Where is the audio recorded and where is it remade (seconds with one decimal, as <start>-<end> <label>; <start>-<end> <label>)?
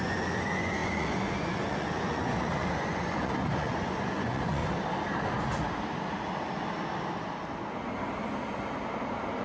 0.0-4.6 remade; 4.6-9.4 recorded